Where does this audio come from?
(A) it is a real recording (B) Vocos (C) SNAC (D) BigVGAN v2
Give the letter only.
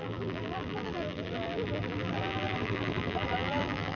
D